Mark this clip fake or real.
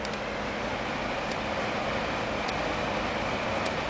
real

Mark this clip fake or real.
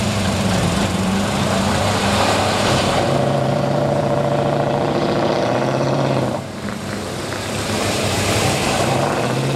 fake